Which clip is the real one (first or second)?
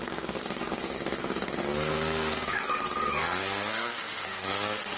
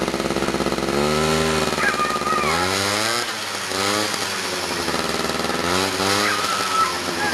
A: second